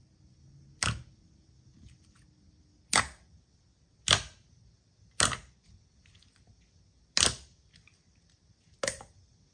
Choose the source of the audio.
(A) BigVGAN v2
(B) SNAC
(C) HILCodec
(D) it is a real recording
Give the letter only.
D